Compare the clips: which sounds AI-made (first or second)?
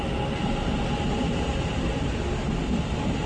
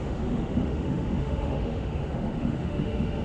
second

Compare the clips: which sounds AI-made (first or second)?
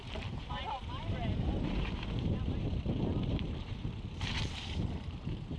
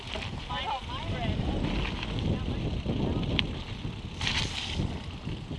first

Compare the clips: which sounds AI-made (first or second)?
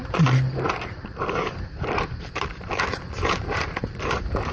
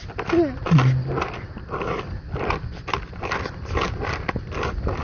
first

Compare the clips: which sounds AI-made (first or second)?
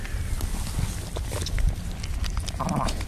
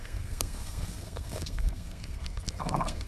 second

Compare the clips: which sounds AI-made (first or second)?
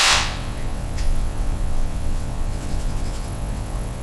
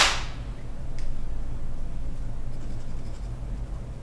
first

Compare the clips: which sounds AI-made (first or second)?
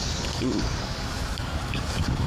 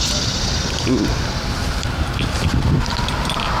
first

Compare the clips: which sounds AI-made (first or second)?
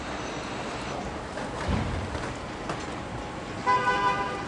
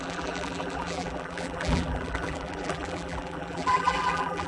second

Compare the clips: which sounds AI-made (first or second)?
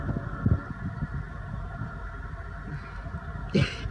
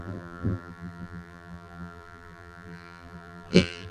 second